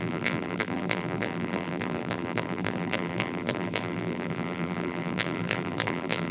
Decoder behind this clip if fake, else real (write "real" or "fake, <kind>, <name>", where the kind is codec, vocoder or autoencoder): fake, vocoder, BigVGAN v2